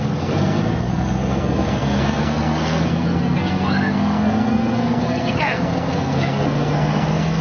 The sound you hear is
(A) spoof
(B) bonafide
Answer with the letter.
A